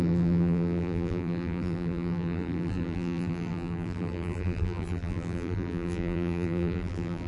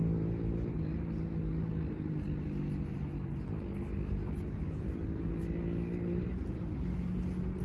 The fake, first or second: first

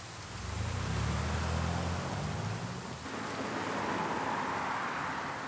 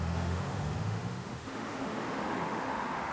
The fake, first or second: second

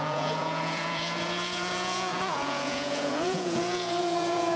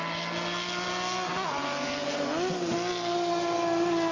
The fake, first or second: first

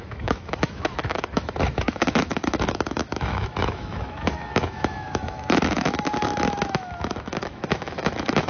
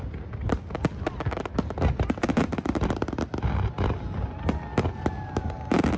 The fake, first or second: first